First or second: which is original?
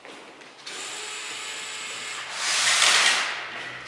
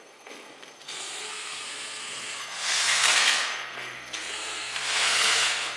first